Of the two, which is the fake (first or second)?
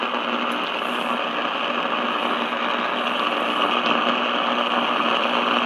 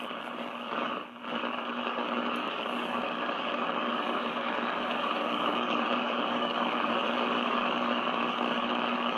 second